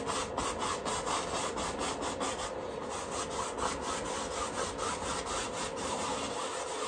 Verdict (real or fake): real